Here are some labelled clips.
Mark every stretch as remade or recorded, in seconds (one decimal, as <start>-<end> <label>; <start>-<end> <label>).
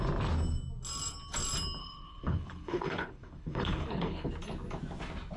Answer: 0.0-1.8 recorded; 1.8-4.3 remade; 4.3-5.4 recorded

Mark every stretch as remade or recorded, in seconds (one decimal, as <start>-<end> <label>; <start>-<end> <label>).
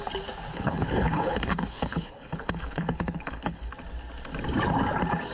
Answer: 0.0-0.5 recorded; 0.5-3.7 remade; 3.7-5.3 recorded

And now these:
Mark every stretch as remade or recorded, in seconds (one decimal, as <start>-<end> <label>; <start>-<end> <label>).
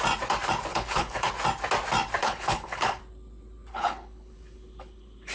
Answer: 0.0-0.7 recorded; 0.7-1.3 remade; 1.3-2.2 recorded; 2.2-3.0 remade; 3.0-3.7 recorded; 3.7-5.3 remade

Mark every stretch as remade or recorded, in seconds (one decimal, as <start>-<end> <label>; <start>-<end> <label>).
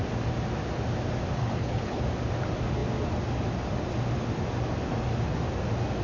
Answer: 0.0-1.4 recorded; 1.4-2.0 remade; 2.0-6.0 recorded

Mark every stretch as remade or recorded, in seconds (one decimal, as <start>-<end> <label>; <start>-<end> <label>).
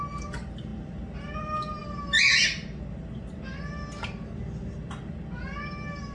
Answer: 0.0-6.1 recorded